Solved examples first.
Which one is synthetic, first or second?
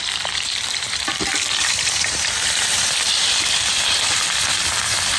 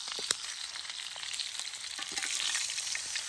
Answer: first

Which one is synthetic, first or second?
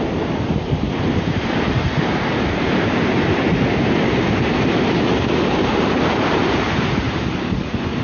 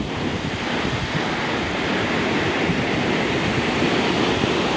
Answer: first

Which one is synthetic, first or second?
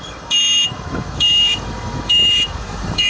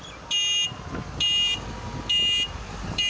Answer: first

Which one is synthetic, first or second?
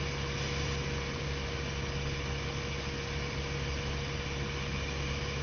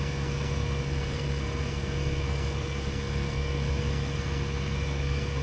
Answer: second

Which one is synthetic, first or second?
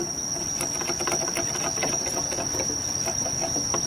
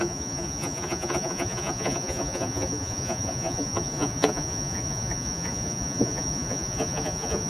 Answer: second